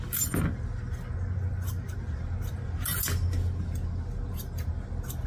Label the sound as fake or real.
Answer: real